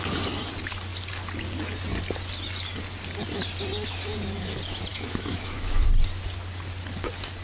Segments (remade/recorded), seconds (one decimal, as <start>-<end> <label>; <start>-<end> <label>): 0.0-4.9 recorded; 4.9-5.8 remade; 5.8-7.4 recorded